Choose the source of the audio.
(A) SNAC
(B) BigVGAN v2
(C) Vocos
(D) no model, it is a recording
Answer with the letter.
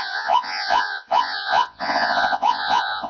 C